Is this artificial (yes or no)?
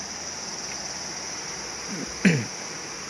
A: no